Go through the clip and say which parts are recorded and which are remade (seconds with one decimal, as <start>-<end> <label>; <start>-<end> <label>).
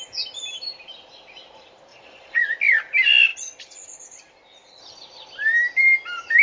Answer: 0.0-1.9 recorded; 1.9-2.4 remade; 2.4-6.4 recorded